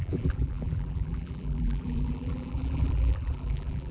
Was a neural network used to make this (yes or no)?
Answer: yes